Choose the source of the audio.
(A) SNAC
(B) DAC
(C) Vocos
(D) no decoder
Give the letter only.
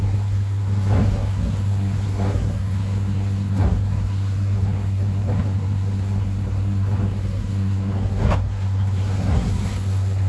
A